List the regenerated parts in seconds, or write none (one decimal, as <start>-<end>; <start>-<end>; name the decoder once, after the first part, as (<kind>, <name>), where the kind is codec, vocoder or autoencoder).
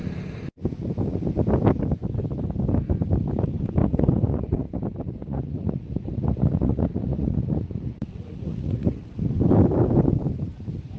3.8-4.8 (vocoder, Vocos); 5.2-9.2